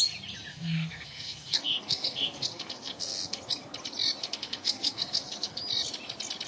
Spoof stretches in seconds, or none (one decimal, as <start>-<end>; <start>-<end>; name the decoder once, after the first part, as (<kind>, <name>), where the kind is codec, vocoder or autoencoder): 0.5-3.4 (codec, SNAC); 4.2-5.6

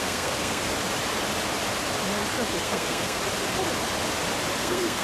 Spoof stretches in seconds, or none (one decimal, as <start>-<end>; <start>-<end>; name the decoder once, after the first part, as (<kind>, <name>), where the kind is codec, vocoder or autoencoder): 0.0-0.6 (codec, SNAC); 2.6-3.2; 4.6-5.0

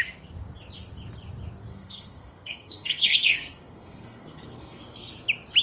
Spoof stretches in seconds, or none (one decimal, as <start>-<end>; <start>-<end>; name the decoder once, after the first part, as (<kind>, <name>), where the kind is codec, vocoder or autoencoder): 1.7-5.1 (codec, SNAC)

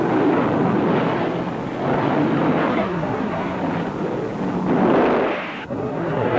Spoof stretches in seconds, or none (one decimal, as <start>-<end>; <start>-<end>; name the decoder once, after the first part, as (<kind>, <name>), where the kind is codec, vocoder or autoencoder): 2.7-3.6 (codec, SNAC); 5.6-6.4

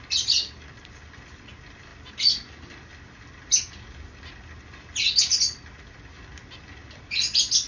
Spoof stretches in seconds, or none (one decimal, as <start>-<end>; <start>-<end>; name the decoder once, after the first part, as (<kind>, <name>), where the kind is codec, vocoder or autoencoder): none

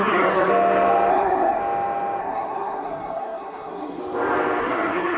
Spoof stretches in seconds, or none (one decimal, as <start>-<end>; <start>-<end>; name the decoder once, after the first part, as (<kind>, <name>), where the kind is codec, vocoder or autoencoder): 0.0-0.5 (codec, SNAC); 1.1-1.6; 2.2-4.0; 4.6-5.2

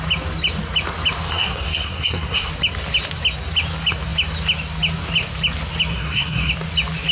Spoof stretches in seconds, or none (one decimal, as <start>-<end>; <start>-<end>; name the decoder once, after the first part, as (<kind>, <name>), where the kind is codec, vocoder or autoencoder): 1.3-2.5 (codec, SNAC); 5.9-6.5

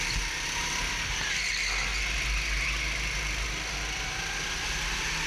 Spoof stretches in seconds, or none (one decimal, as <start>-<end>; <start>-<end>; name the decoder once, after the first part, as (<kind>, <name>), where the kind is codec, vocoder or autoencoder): none